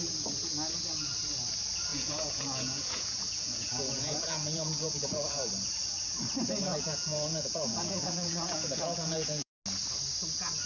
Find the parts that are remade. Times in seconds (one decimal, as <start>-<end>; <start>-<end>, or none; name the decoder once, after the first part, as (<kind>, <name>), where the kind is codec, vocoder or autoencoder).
1.9-5.5 (vocoder, Vocos); 6.7-9.5